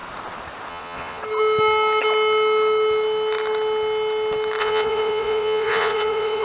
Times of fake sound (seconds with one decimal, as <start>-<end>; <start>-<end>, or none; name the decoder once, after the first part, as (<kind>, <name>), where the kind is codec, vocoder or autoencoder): 0.7-1.2 (vocoder, Vocos); 4.6-6.4